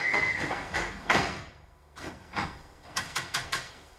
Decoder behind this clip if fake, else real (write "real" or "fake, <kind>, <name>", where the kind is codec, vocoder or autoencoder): fake, codec, SNAC